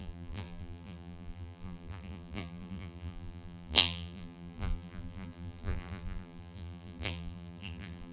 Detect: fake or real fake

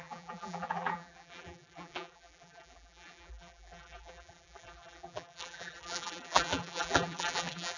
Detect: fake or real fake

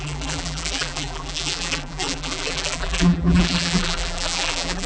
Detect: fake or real fake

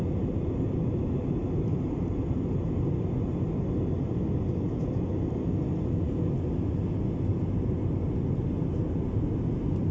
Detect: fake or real real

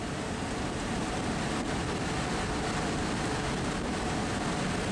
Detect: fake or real real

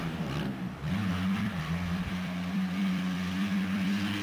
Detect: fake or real fake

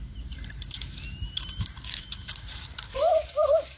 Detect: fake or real fake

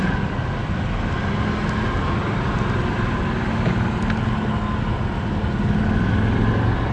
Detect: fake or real real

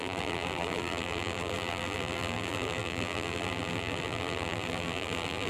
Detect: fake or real fake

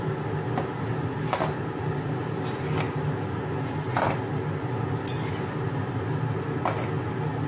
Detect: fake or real real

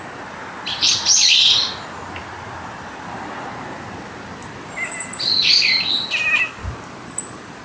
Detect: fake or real real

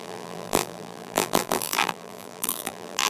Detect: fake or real fake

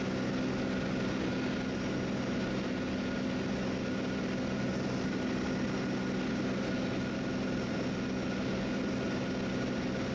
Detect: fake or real real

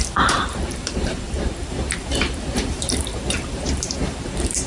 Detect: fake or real fake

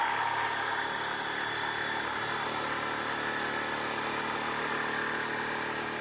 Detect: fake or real real